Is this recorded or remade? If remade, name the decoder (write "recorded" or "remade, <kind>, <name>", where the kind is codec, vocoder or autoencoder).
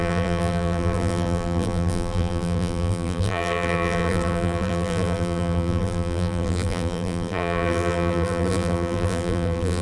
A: remade, vocoder, BigVGAN v2